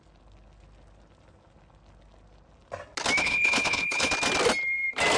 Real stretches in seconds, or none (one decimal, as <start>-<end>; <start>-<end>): 0.0-3.2; 4.1-5.2